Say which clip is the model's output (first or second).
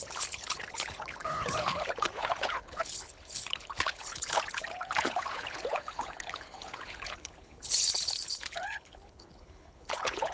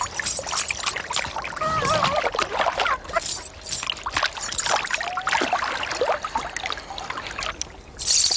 first